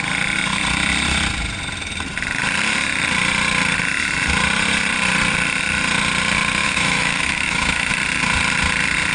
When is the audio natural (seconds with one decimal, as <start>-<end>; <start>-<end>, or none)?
0.0-6.6; 7.9-9.1